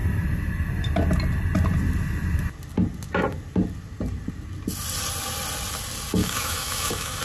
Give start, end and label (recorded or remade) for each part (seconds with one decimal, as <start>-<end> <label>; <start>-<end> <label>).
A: 0.0-6.2 recorded; 6.2-7.2 remade